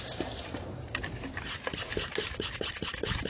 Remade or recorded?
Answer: recorded